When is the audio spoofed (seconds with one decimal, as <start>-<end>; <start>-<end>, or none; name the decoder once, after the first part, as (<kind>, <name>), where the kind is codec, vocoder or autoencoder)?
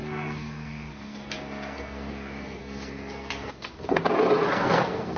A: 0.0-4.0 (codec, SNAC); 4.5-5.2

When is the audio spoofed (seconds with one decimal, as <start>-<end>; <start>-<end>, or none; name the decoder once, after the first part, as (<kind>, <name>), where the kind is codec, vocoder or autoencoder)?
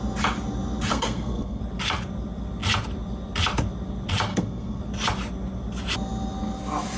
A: 0.9-1.6 (codec, SNAC); 4.3-4.8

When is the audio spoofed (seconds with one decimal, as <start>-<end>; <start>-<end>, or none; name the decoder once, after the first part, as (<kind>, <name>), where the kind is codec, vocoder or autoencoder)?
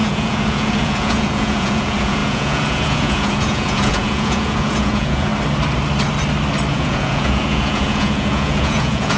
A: 0.0-5.3 (vocoder, Vocos); 6.7-9.2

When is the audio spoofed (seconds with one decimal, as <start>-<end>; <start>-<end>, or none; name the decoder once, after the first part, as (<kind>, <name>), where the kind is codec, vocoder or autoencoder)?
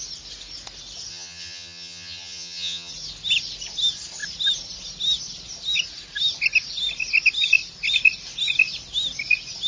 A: 1.1-2.9 (vocoder, HiFi-GAN)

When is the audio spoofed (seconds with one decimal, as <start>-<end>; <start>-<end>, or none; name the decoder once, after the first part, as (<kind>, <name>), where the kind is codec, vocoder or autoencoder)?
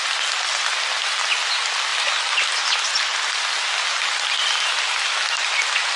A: none